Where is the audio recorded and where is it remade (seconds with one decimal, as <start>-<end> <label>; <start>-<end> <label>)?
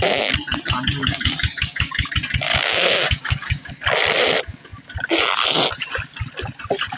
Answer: 0.0-1.0 recorded; 1.0-2.1 remade; 2.1-2.5 recorded; 2.5-3.7 remade; 3.7-7.0 recorded